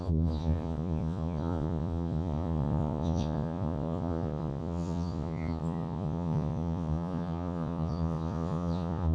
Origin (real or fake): fake